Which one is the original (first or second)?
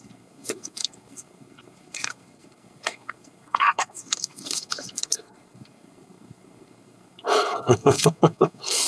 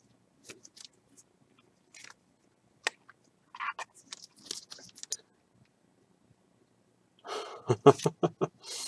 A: second